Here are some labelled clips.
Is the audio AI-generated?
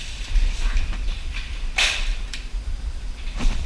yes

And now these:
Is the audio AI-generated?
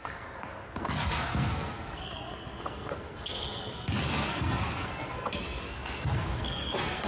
yes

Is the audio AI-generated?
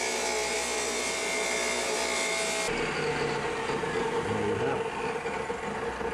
no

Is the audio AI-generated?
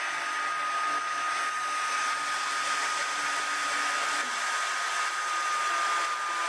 no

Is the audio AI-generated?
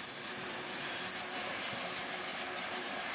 no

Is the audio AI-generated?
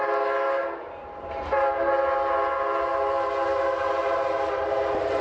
no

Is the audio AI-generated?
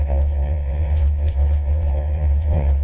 yes